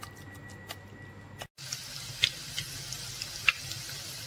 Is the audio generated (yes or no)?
no